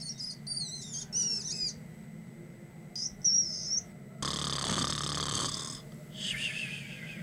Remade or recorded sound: recorded